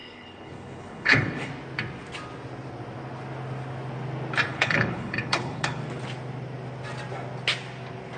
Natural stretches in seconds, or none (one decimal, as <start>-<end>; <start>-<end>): 1.5-4.5; 5.8-8.2